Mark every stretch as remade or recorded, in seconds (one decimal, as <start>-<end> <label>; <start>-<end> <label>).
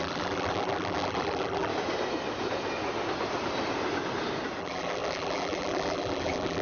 0.0-1.7 remade; 1.7-4.6 recorded; 4.6-6.6 remade